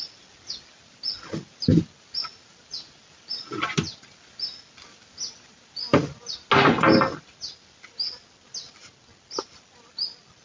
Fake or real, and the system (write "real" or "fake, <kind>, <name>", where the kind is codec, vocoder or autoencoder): real